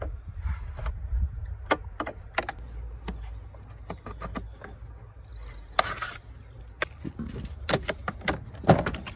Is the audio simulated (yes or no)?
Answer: no